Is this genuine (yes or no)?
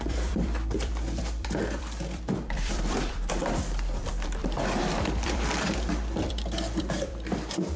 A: no